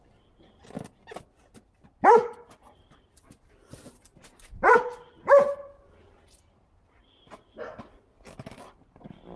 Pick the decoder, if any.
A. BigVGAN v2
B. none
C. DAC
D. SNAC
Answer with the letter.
B